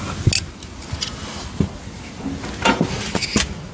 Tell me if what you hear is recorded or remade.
recorded